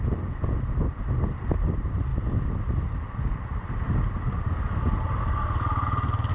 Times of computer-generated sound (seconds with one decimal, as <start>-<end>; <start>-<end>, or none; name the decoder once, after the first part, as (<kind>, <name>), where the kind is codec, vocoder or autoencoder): none